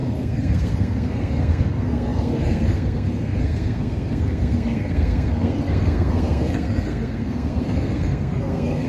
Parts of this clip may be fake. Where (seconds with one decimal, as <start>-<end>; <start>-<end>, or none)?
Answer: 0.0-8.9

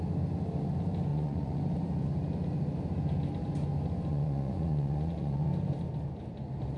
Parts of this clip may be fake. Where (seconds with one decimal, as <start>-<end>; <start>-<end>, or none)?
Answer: 1.1-1.6; 4.1-5.5

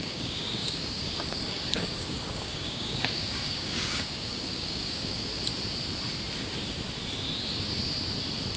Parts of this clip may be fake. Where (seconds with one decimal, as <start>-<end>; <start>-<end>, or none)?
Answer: 0.0-5.3

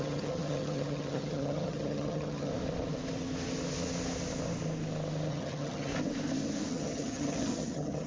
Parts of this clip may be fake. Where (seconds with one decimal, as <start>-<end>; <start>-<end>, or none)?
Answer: 0.0-2.5; 5.3-5.9; 6.7-8.1

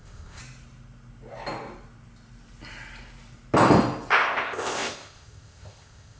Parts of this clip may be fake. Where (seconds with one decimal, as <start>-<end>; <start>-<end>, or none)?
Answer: 0.0-0.4; 4.1-6.2

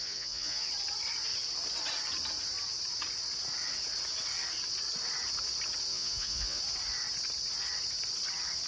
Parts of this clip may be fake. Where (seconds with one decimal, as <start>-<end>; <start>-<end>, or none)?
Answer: 0.0-0.7; 5.9-6.6

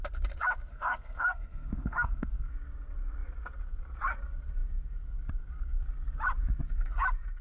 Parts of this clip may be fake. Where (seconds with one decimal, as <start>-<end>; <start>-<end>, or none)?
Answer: 0.7-2.5

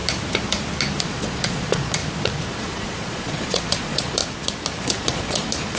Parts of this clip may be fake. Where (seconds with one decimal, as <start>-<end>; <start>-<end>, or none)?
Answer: 1.0-2.0; 2.6-4.2; 4.8-5.8